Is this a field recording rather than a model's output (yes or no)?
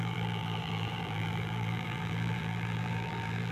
no